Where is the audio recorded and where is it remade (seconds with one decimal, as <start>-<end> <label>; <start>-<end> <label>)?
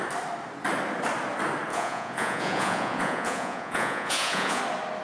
0.0-1.7 recorded; 1.7-4.6 remade; 4.6-5.0 recorded